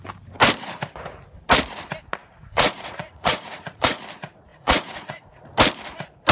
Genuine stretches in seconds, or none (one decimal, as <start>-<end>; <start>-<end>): 0.0-2.2; 4.0-4.5; 5.3-6.3